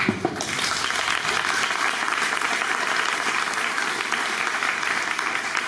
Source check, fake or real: real